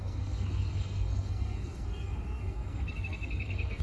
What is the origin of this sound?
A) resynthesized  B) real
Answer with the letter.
A